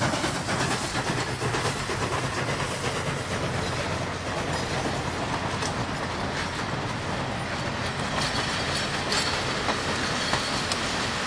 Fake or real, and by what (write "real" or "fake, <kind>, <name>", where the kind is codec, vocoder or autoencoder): real